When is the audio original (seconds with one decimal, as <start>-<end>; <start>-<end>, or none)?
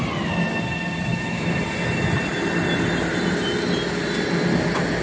0.0-1.1; 1.6-5.0